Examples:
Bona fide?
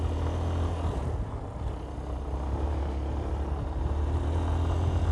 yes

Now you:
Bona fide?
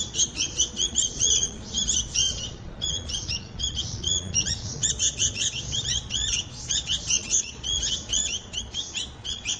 no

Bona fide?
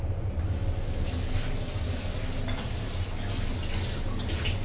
yes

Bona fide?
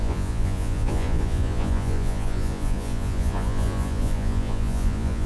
no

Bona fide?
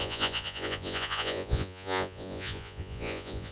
no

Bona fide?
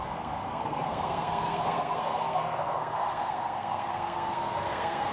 no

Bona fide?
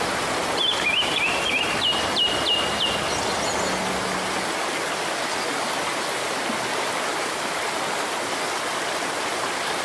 yes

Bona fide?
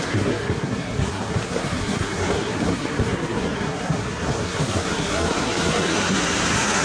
no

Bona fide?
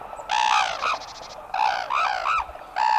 yes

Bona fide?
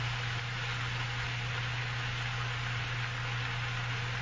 yes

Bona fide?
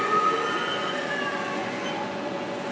no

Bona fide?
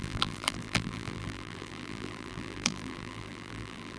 no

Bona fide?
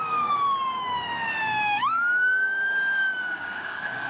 no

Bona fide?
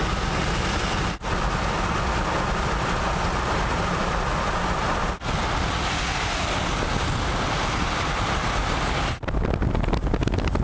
yes